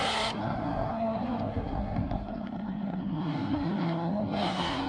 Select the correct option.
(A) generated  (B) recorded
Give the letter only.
A